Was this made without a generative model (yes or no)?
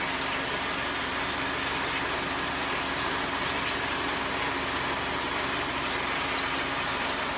yes